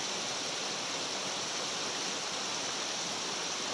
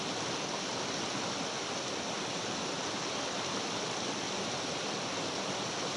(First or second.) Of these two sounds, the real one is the second